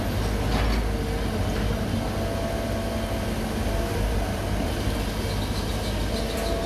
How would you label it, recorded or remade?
recorded